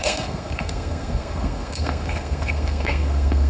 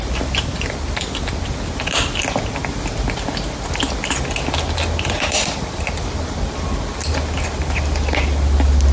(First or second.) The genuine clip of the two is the second